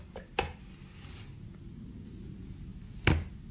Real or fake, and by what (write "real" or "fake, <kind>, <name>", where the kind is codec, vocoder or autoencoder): real